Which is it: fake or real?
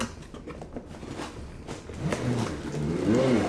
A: real